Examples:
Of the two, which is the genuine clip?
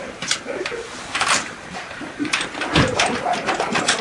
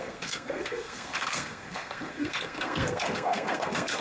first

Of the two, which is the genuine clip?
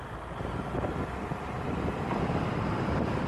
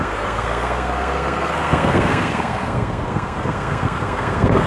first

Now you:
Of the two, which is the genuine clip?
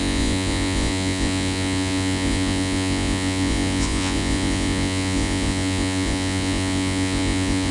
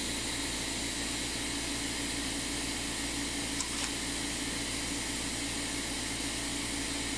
second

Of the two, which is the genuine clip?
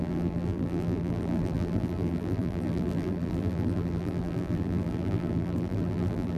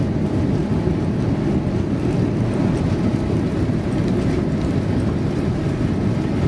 second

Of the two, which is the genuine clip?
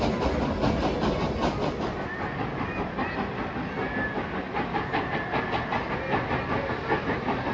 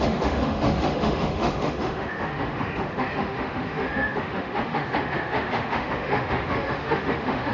first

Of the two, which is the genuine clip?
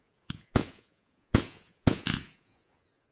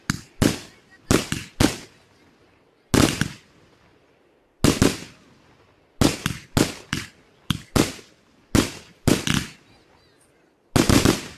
second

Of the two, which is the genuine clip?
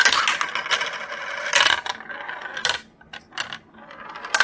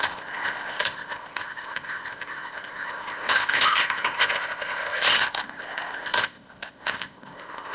first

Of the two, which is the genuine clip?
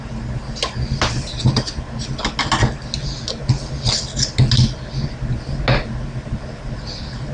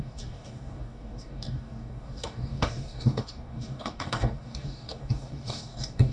first